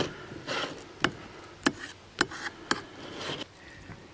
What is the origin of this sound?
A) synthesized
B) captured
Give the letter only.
B